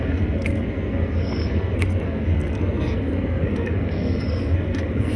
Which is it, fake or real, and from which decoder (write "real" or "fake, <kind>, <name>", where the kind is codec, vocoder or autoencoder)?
fake, codec, SNAC